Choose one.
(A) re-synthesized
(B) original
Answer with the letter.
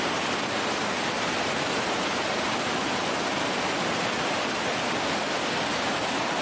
B